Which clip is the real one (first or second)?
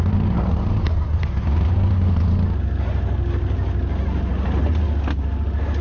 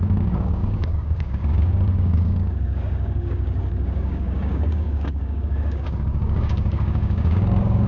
first